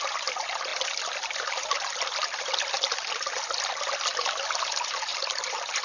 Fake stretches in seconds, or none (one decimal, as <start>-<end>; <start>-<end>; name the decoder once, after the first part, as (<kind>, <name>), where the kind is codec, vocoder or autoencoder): none